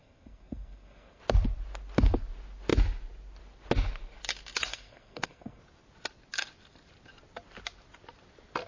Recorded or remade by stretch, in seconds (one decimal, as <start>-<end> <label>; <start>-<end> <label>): 0.0-1.2 remade; 1.2-4.7 recorded; 4.7-5.6 remade; 5.6-8.7 recorded